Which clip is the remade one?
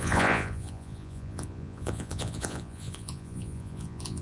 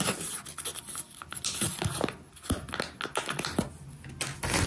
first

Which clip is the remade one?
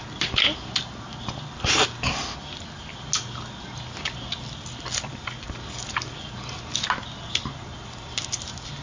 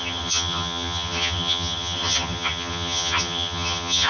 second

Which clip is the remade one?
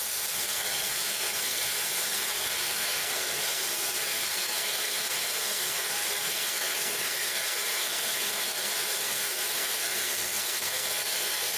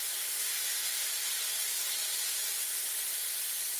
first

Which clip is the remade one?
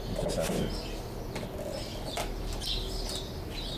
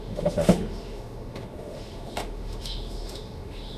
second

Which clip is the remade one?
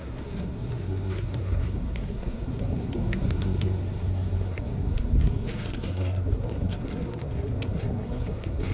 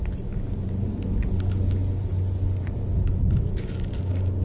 first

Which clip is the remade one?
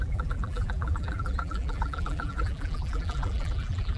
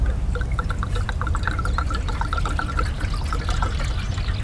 first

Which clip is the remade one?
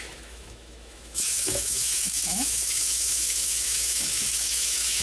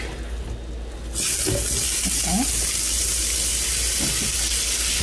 first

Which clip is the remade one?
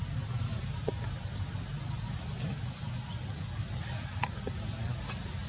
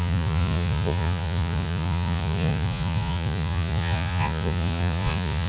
second